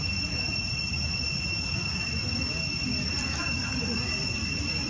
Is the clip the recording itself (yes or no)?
yes